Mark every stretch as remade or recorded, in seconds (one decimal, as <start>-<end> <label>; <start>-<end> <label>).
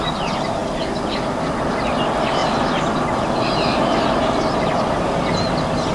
0.0-5.9 recorded